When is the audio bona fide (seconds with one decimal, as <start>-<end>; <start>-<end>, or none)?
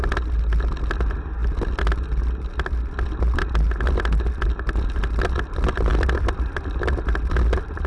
0.0-5.9